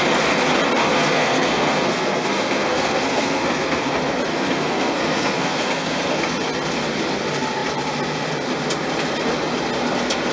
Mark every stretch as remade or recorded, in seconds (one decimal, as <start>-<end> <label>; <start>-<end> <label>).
0.0-0.8 recorded; 0.8-3.9 remade; 3.9-4.3 recorded; 4.3-6.2 remade; 6.2-10.3 recorded